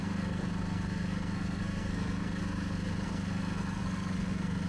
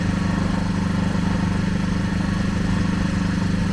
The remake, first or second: first